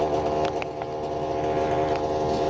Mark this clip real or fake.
real